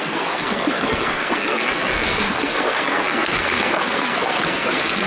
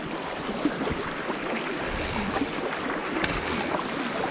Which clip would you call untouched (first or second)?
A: second